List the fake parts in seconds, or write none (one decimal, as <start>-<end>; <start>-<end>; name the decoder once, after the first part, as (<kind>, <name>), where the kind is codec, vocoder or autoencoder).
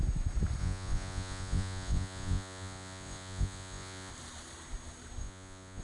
0.6-4.1 (vocoder, Vocos); 5.2-5.8